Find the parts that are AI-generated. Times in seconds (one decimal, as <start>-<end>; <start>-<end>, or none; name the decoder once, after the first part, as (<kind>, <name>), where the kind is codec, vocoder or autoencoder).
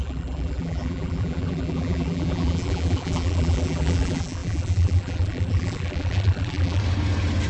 0.0-6.8 (vocoder, BigVGAN v2)